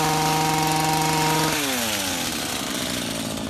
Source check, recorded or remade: recorded